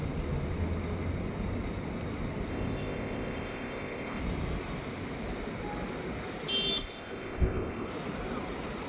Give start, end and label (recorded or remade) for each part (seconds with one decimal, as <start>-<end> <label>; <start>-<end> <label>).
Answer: 0.0-2.5 recorded; 2.5-4.2 remade; 4.2-6.8 recorded; 6.8-7.9 remade; 7.9-8.9 recorded